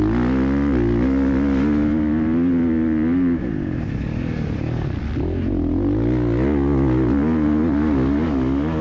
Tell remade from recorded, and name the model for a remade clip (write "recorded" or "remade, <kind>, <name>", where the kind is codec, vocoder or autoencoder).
recorded